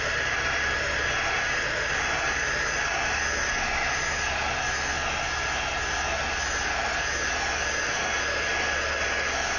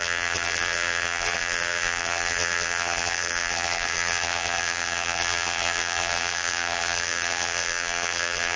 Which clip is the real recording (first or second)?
first